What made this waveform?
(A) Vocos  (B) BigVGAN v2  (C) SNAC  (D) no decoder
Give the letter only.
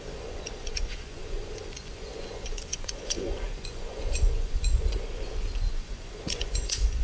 A